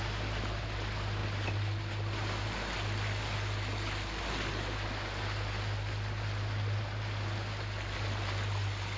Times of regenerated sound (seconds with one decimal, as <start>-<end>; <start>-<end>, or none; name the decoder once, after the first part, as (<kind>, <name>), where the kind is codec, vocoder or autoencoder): none